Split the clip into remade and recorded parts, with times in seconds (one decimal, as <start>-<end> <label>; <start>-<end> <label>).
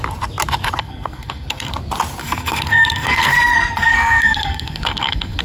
0.0-0.8 recorded; 0.8-1.7 remade; 1.7-2.2 recorded; 2.2-5.4 remade